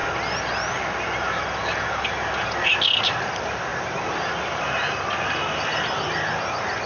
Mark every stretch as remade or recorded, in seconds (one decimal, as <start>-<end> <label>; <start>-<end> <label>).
0.0-6.9 recorded